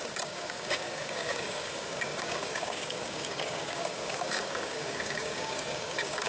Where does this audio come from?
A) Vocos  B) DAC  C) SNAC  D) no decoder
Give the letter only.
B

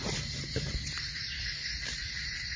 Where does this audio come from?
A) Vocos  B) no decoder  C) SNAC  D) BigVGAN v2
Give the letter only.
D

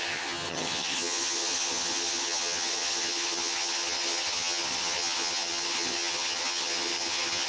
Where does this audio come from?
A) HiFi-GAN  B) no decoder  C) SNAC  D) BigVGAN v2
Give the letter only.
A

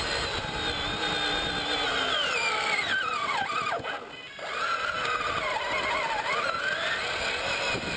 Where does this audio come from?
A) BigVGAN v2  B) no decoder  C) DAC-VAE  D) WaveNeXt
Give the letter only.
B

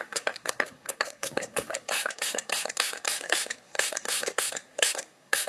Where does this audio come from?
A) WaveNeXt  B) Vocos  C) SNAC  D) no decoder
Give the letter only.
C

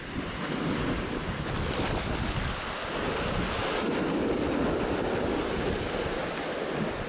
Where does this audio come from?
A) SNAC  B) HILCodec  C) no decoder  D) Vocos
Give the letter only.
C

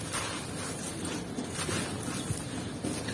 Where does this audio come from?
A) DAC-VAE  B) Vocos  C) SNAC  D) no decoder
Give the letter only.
D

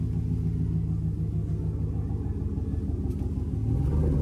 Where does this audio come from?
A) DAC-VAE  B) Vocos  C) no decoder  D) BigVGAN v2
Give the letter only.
C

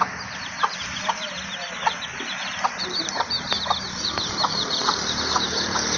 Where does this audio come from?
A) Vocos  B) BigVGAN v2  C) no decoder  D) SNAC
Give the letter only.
B